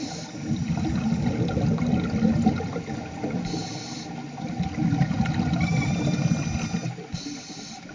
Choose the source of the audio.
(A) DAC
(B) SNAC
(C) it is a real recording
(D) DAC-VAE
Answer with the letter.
C